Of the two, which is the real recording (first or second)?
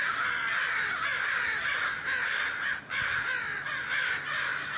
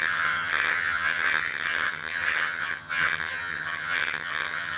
first